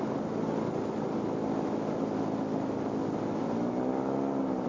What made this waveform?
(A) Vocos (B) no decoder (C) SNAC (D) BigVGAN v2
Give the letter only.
B